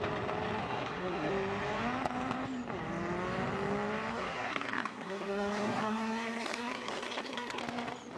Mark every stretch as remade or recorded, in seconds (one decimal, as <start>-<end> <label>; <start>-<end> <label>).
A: 0.0-0.6 recorded; 0.6-1.3 remade; 1.3-4.1 recorded; 4.1-7.6 remade; 7.6-8.2 recorded